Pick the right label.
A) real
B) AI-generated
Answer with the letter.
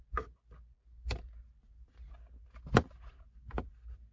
A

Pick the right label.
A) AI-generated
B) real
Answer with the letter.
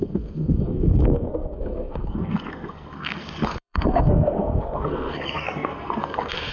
A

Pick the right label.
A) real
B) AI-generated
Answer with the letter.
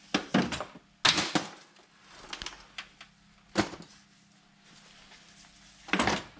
A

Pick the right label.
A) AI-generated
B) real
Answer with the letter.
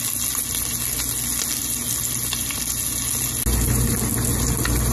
B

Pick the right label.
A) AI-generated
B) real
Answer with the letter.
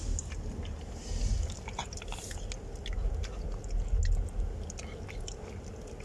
B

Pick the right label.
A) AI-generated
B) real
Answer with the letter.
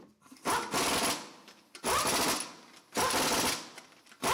B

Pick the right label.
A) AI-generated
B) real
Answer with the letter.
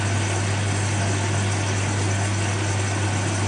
B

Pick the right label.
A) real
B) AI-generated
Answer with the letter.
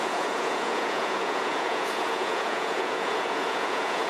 B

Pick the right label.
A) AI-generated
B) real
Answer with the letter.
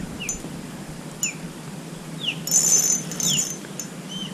B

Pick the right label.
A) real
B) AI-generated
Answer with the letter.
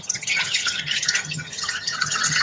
B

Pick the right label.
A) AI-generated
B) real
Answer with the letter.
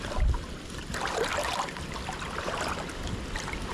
B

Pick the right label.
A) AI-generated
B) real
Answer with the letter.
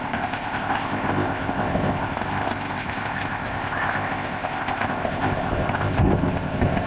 A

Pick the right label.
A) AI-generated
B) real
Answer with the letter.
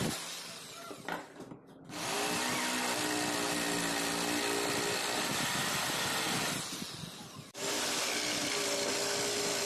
B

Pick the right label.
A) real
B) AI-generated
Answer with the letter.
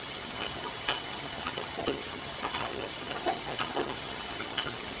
B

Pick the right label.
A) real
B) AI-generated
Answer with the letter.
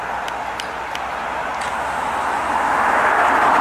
A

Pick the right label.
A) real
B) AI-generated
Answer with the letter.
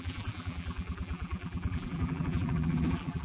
B